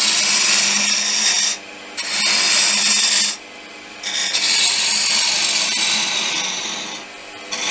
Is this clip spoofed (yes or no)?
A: no